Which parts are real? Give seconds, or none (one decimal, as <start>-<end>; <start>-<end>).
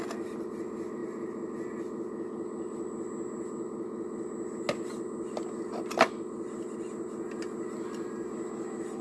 0.0-9.0